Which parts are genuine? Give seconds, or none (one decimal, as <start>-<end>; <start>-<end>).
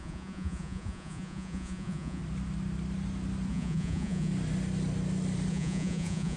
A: 2.2-3.5; 4.3-5.5